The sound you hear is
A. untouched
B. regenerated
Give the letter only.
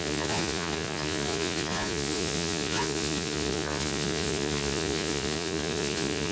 B